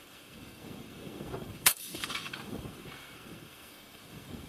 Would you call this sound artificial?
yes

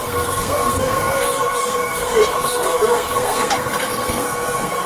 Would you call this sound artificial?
yes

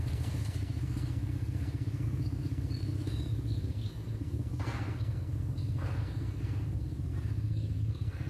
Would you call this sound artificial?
yes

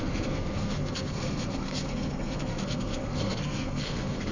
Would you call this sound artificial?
yes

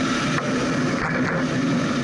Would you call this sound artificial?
no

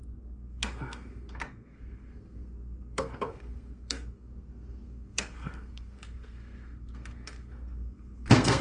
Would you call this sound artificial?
yes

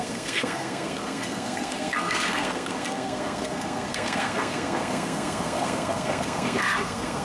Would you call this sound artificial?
yes